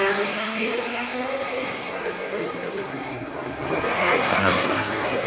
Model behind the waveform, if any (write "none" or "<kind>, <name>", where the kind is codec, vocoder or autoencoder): codec, SNAC